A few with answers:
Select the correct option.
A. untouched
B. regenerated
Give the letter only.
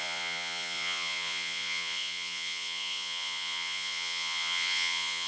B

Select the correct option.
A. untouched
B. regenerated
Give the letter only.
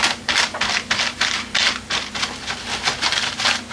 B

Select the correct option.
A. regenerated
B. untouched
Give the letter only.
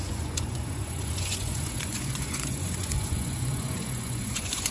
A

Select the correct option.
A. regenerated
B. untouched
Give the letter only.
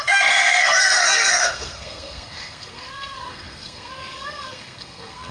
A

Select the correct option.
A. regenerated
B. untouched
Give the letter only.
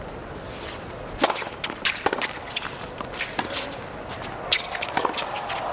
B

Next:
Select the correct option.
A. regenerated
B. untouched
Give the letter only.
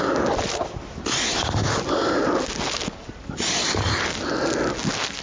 B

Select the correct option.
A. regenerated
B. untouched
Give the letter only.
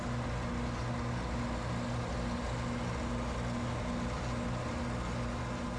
B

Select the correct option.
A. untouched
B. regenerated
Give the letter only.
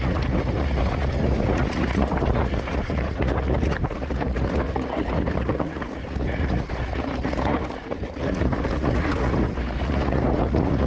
B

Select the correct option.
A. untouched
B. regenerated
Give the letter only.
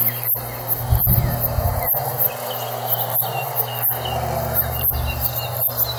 A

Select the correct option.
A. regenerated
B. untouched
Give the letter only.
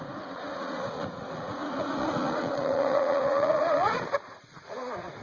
A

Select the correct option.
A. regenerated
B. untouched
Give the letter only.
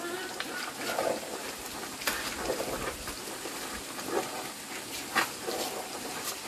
B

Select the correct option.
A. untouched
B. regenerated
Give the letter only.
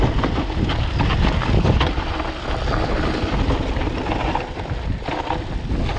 A